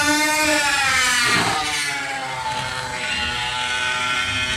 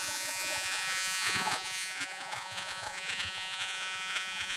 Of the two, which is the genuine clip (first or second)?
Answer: first